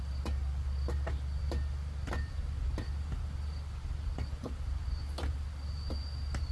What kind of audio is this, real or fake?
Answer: real